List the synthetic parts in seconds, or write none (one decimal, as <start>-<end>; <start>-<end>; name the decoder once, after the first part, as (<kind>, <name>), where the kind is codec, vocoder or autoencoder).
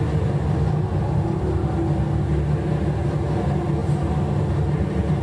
none